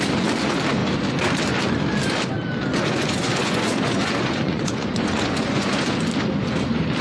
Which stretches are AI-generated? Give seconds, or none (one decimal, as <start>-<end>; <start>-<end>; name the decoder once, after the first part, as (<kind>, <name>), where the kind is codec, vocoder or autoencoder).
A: 2.7-5.9 (vocoder, Vocos)